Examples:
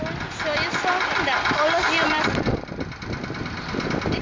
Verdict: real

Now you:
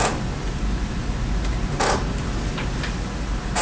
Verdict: real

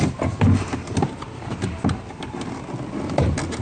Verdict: real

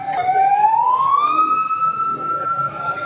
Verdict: fake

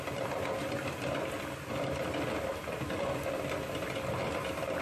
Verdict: real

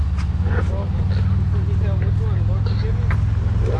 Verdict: real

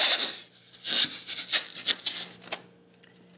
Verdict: real